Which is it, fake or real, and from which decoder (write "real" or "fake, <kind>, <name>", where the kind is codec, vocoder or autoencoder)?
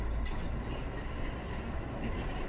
real